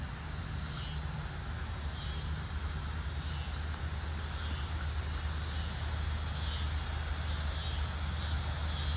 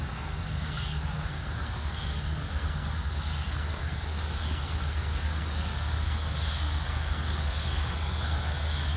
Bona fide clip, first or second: first